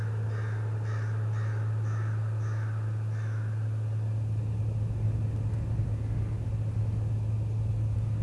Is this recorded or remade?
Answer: recorded